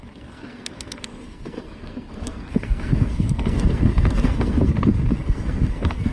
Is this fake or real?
fake